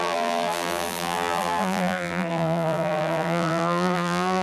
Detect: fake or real fake